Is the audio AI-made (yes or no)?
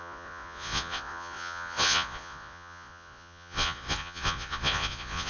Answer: yes